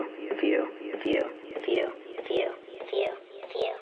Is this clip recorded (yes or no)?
yes